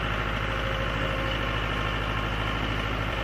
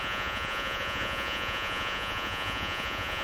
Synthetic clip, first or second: second